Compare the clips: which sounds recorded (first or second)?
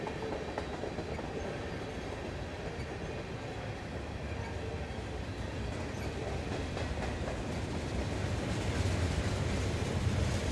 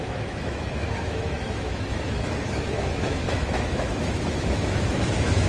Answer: first